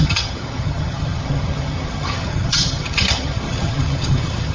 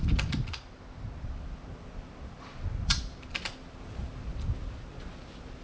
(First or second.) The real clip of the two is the second